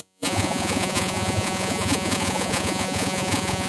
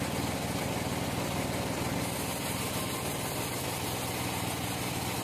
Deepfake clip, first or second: first